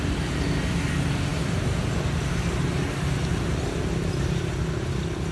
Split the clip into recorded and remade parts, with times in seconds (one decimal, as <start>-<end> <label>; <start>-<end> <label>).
0.0-5.3 recorded